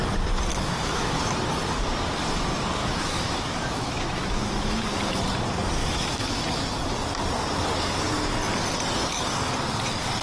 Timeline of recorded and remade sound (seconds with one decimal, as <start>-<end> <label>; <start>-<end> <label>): 0.0-0.5 recorded; 0.5-1.2 remade; 1.2-2.8 recorded; 2.8-5.2 remade; 5.2-5.8 recorded; 5.8-6.4 remade; 6.4-10.2 recorded